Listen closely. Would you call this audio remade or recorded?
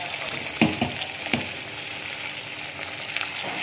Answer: recorded